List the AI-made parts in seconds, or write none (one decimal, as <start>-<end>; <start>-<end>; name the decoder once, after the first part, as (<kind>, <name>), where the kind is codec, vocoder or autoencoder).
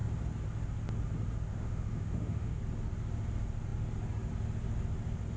1.5-2.6 (autoencoder, DAC-VAE)